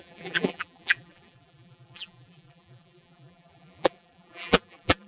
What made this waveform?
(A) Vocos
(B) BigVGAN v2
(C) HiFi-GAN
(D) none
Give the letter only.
B